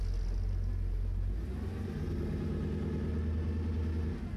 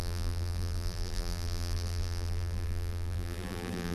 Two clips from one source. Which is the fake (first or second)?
second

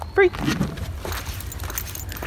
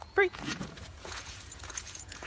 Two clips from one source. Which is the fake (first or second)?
second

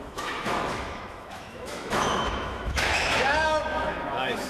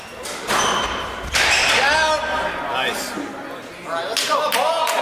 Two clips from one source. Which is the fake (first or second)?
first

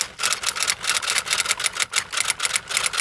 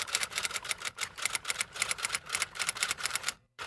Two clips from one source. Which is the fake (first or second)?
second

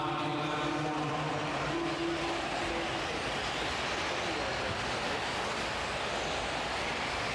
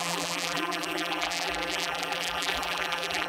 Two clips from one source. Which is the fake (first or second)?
second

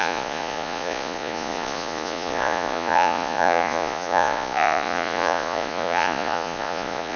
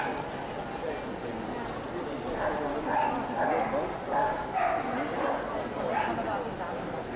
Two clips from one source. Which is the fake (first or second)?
first